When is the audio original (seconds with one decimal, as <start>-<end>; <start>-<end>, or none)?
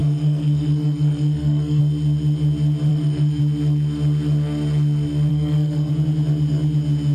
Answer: 1.8-2.9; 3.4-5.3; 5.9-7.1